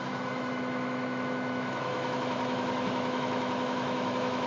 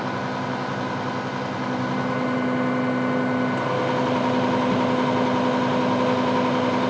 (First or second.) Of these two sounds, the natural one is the second